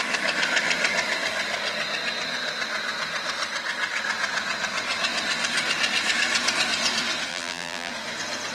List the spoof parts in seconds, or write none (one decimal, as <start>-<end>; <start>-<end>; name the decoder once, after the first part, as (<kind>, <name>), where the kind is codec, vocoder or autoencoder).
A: 7.3-7.9 (vocoder, BigVGAN v2)